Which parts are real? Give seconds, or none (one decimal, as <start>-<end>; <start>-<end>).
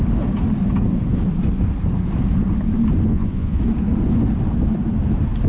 0.0-3.1; 3.6-5.5